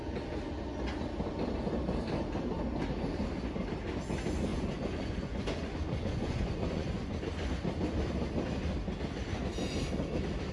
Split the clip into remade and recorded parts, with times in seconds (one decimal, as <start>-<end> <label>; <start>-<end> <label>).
0.0-4.5 recorded; 4.5-7.1 remade; 7.1-10.5 recorded